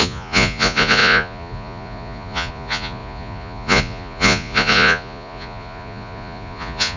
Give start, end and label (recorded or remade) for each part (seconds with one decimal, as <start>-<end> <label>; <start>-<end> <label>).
0.0-7.0 remade